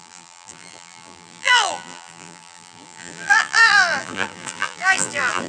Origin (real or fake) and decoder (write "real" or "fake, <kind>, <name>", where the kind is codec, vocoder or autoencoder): fake, vocoder, BigVGAN v2